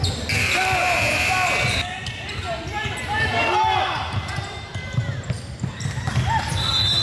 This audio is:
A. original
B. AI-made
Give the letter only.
A